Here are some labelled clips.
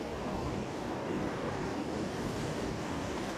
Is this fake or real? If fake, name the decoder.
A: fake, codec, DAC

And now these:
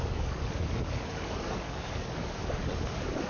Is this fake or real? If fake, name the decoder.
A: fake, codec, DAC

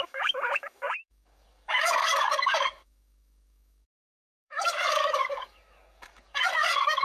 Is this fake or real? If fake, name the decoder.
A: fake, codec, DAC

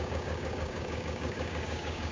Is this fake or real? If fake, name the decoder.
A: fake, codec, DAC